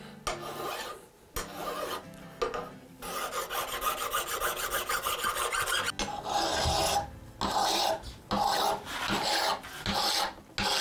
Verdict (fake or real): real